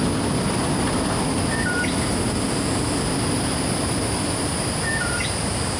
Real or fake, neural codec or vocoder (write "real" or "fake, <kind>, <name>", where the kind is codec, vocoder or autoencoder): real